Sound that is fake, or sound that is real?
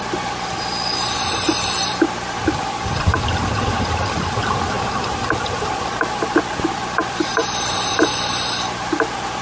real